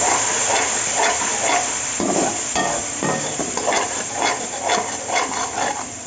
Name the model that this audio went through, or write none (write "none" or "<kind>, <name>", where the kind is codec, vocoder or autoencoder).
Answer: vocoder, BigVGAN v2